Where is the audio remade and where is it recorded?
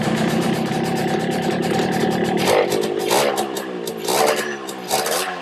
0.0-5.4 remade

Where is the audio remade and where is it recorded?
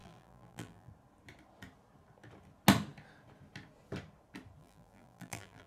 0.0-0.9 remade; 0.9-4.6 recorded; 4.6-5.7 remade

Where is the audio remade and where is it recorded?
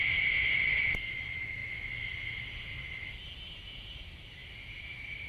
0.0-1.6 remade; 1.6-3.6 recorded; 3.6-5.3 remade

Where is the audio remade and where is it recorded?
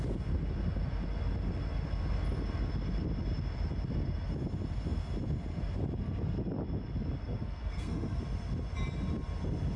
0.0-7.2 recorded; 7.2-8.2 remade; 8.2-9.8 recorded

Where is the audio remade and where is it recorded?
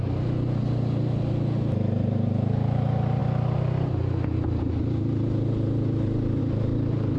0.0-7.2 recorded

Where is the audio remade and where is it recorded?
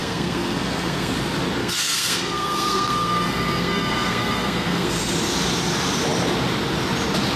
0.0-1.1 remade; 1.1-1.6 recorded; 1.6-5.1 remade; 5.1-7.4 recorded